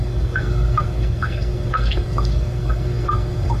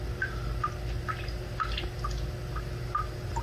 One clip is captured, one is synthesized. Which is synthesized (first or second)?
first